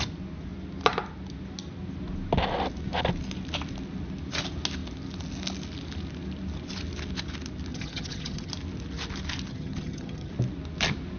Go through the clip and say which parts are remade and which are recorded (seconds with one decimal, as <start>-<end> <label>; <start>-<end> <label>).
0.0-7.7 recorded; 7.7-8.5 remade; 8.5-9.5 recorded; 9.5-10.3 remade; 10.3-11.2 recorded